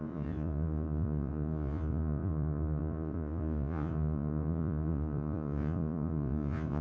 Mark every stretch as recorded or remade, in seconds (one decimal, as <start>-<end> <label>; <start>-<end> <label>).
0.0-6.8 remade

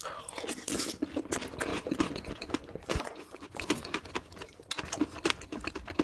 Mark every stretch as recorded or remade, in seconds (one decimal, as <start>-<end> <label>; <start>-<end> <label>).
0.0-1.7 recorded; 1.7-4.1 remade; 4.1-6.0 recorded

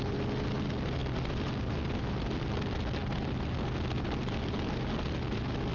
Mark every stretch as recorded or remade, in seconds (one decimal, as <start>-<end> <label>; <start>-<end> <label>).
0.0-5.7 recorded

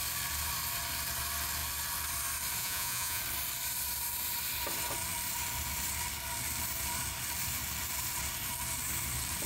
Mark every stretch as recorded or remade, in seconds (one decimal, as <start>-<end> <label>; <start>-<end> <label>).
0.0-2.6 recorded; 2.6-3.2 remade; 3.2-9.5 recorded

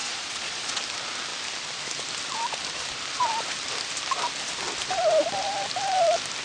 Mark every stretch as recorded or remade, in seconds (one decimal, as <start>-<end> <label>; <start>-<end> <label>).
0.0-0.8 remade; 0.8-6.4 recorded

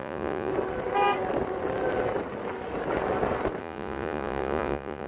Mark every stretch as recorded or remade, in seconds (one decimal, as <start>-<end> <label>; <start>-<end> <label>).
0.0-0.5 remade; 0.5-3.6 recorded; 3.6-5.1 remade

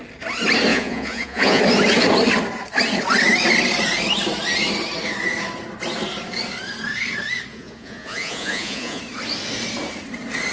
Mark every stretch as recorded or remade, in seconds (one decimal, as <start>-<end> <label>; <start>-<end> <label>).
0.0-0.7 recorded; 0.7-1.6 remade; 1.6-7.5 recorded; 7.5-9.0 remade; 9.0-10.5 recorded

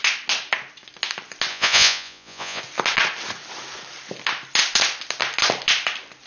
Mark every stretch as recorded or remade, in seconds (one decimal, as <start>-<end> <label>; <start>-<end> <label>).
0.0-1.5 recorded; 1.5-2.6 remade; 2.6-6.3 recorded